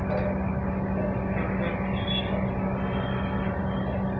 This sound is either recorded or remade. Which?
recorded